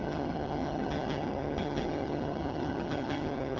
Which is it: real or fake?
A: fake